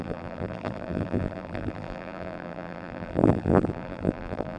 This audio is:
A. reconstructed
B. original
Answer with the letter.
A